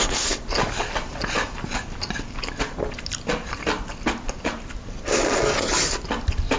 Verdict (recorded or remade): recorded